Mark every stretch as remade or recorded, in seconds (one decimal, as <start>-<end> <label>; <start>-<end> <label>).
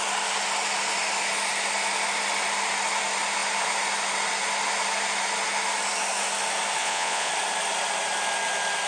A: 0.0-6.8 recorded; 6.8-7.3 remade; 7.3-8.9 recorded